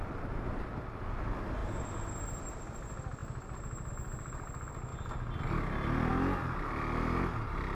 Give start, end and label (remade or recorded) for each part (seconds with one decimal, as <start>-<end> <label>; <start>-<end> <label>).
0.0-4.9 recorded; 4.9-5.5 remade; 5.5-7.7 recorded